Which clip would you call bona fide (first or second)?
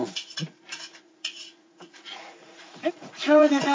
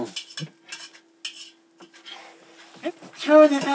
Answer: second